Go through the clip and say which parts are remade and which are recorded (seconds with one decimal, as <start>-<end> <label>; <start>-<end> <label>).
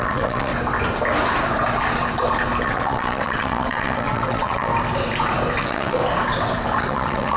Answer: 0.0-0.5 remade; 0.5-2.6 recorded; 2.6-4.7 remade; 4.7-5.6 recorded; 5.6-6.0 remade; 6.0-6.8 recorded; 6.8-7.4 remade